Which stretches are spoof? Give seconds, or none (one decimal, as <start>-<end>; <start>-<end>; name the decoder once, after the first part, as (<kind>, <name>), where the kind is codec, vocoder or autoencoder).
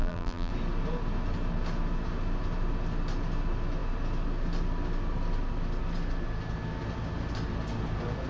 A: 0.0-0.5 (vocoder, BigVGAN v2)